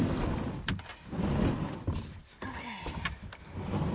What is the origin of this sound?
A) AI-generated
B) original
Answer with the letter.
B